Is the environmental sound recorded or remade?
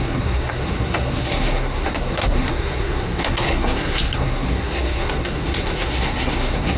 remade